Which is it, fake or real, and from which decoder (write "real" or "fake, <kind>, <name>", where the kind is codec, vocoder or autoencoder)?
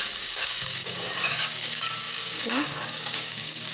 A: fake, codec, DAC